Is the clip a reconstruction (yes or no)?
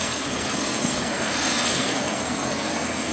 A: yes